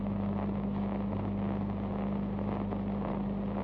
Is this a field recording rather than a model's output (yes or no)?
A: yes